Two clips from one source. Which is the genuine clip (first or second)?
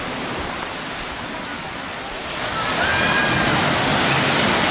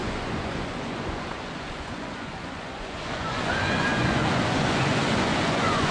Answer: first